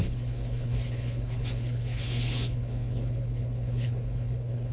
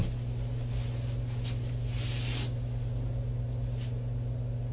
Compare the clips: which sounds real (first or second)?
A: second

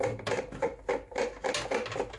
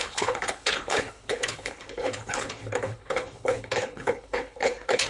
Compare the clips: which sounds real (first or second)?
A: first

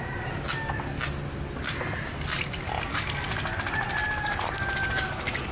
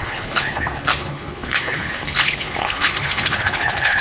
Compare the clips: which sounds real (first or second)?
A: first